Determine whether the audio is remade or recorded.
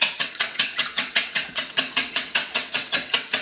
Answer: remade